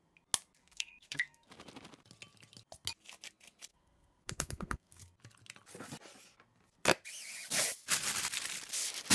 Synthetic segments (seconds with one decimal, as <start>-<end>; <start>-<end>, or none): 0.6-1.5; 3.7-5.0